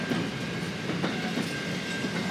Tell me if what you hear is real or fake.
real